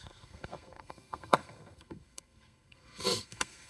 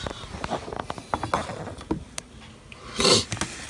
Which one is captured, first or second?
second